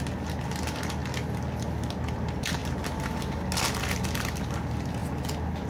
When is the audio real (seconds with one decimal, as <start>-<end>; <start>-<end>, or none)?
0.0-5.7